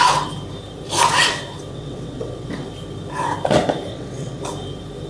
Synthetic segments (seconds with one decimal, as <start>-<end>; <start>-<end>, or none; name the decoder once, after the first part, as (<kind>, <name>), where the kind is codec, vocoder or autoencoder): 1.7-2.7 (vocoder, WaveNeXt); 3.9-4.4